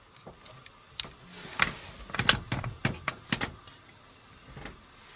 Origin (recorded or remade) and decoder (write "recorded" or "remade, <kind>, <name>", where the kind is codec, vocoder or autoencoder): recorded